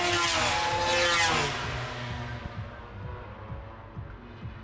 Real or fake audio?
real